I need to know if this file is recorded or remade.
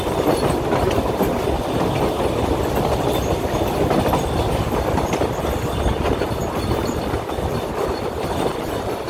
recorded